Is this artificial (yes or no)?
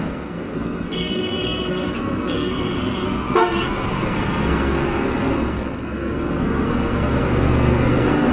yes